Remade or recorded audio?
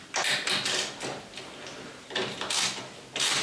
recorded